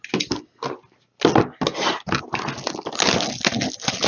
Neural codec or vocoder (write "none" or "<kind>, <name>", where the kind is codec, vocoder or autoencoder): none